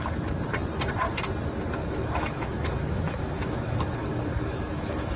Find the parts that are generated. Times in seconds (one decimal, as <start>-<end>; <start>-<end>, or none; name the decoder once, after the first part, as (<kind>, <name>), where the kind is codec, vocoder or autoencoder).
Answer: 1.8-5.2 (autoencoder, DAC-VAE)